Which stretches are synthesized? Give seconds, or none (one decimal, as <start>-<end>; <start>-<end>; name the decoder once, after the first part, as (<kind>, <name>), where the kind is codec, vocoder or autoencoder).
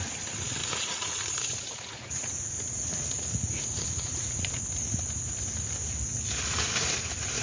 0.6-5.0 (vocoder, Vocos)